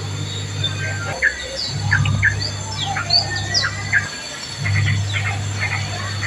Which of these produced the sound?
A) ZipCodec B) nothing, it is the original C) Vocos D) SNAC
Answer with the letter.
B